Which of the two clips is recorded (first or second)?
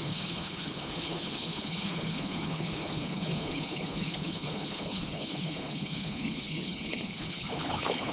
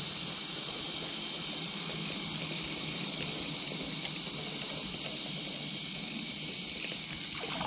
second